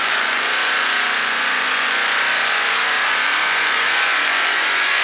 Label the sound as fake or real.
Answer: fake